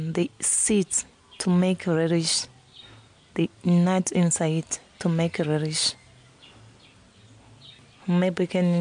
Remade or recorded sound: recorded